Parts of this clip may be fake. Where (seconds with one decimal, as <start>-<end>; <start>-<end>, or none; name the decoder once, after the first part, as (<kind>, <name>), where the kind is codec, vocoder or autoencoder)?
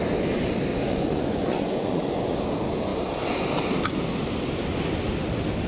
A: 0.7-2.4 (vocoder, Vocos)